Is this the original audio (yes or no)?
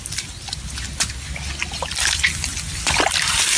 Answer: yes